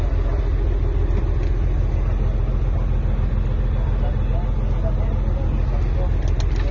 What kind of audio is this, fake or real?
real